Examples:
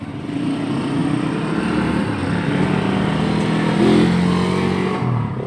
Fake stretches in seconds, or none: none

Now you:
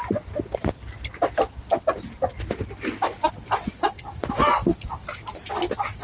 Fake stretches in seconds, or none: 4.5-5.5 (vocoder, BigVGAN v2)

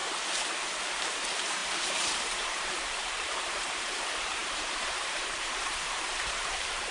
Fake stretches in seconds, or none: 1.0-6.9 (vocoder, BigVGAN v2)

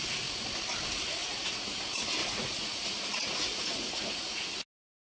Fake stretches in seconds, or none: 1.2-1.8 (vocoder, Vocos); 2.2-4.5

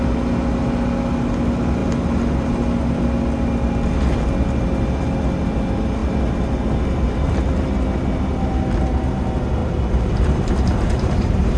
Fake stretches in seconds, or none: 9.6-11.6 (vocoder, BigVGAN v2)

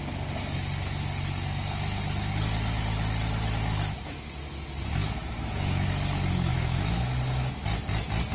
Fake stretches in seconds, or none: 5.0-5.9 (autoencoder, DAC-VAE); 6.5-7.0